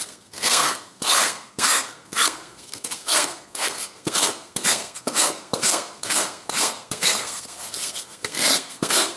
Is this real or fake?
fake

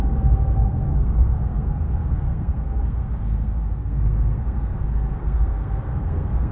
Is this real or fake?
fake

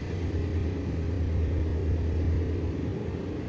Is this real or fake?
real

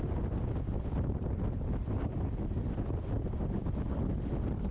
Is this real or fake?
real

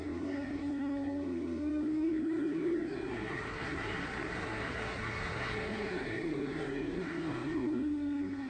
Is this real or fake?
fake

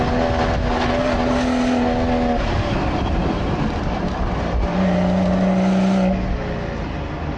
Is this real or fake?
real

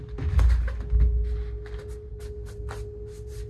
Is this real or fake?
real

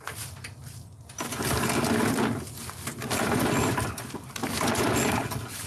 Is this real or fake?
real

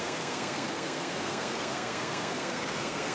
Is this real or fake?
fake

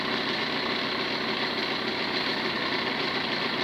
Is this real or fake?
real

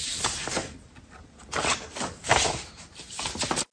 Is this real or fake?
real